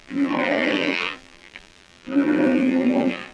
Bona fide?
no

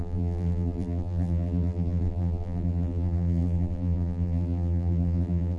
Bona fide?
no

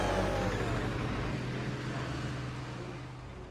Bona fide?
yes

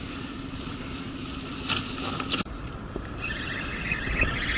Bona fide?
no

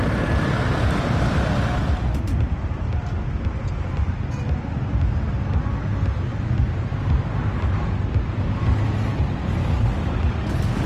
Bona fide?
yes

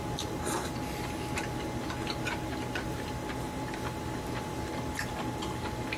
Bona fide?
yes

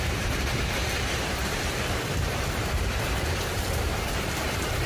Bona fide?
no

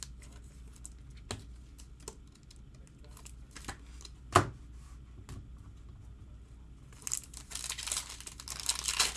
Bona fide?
yes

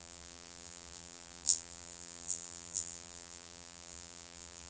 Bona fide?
no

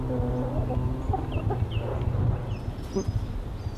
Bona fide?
yes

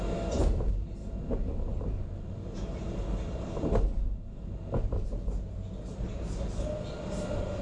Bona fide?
yes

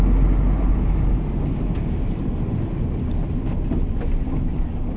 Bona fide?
yes